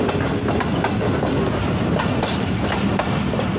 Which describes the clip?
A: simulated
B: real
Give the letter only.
B